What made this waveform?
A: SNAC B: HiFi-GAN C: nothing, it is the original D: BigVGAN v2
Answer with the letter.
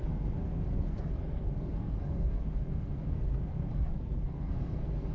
A